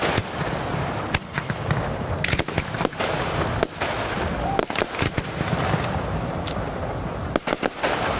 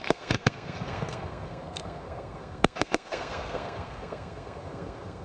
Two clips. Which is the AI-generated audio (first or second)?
second